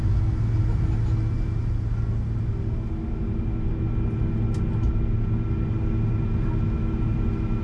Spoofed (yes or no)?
no